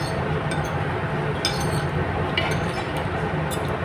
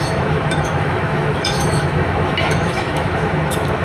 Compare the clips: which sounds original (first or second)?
first